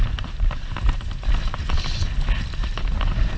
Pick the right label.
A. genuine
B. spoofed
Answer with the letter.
A